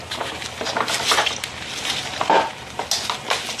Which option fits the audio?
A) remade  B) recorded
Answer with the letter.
B